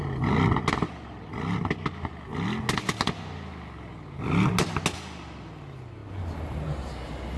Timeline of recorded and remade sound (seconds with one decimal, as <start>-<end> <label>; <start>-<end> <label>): 0.0-7.4 recorded